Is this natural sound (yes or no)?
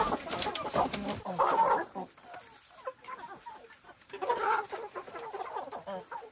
yes